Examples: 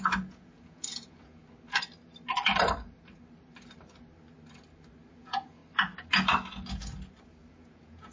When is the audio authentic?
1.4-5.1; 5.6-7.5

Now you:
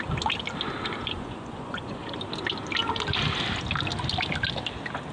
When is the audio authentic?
0.0-1.0; 2.1-5.1

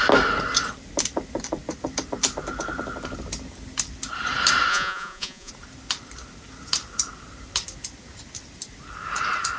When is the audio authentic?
0.0-4.7; 5.5-9.6